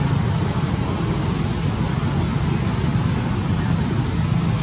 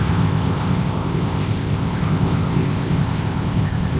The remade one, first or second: second